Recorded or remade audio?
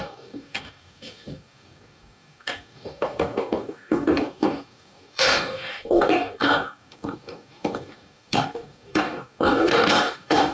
remade